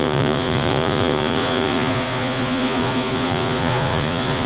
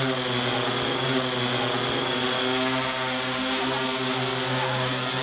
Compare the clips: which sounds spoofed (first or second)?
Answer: first